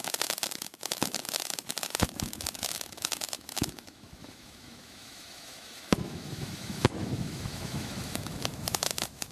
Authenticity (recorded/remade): remade